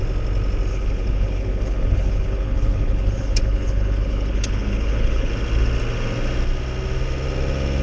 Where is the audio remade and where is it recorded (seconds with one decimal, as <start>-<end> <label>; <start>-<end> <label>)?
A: 0.0-0.7 recorded; 0.7-5.3 remade; 5.3-7.8 recorded